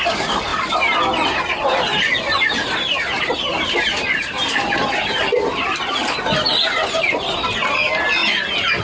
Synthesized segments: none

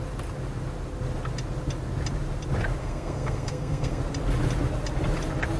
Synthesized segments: 2.8-4.0 (codec, SNAC)

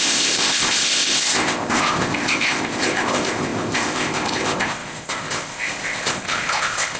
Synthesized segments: 0.0-7.0 (codec, ZipCodec)

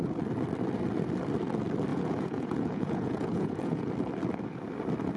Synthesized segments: 1.9-3.9 (vocoder, Vocos)

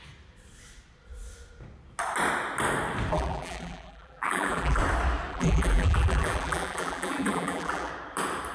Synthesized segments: 3.1-4.8 (vocoder, BigVGAN v2); 5.3-7.9

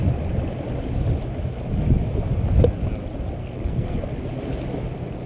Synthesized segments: 3.4-4.0 (codec, SNAC)

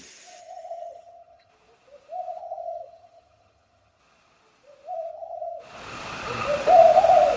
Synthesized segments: 0.4-1.5 (vocoder, HiFi-GAN); 2.4-4.0; 5.1-5.6

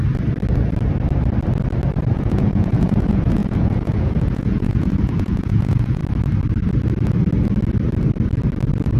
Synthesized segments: 2.1-6.0 (vocoder, Vocos)